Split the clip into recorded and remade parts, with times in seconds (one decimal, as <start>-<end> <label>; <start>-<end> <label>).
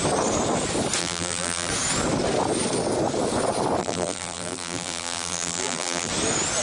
0.0-1.0 recorded; 1.0-1.7 remade; 1.7-3.8 recorded; 3.8-6.1 remade; 6.1-6.6 recorded